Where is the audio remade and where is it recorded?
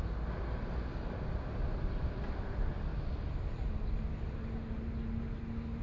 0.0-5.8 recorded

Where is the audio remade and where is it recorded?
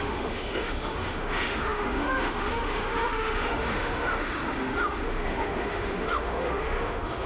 0.0-7.3 remade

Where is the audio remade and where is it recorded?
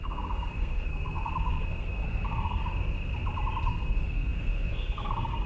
0.0-2.6 remade; 2.6-3.7 recorded; 3.7-5.5 remade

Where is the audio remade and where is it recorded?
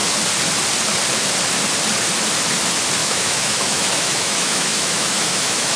0.0-3.0 recorded; 3.0-5.8 remade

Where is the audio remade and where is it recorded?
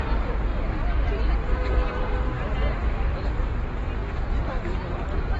0.0-0.5 recorded; 0.5-2.0 remade; 2.0-2.8 recorded; 2.8-3.4 remade; 3.4-5.4 recorded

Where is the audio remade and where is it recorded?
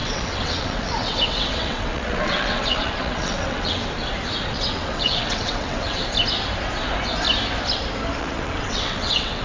0.0-3.8 remade; 3.8-4.5 recorded; 4.5-6.0 remade; 6.0-8.2 recorded; 8.2-9.4 remade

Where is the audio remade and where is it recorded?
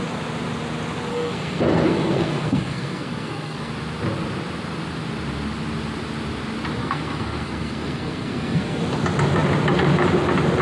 0.0-1.1 recorded; 1.1-3.7 remade; 3.7-6.8 recorded; 6.8-8.8 remade; 8.8-10.6 recorded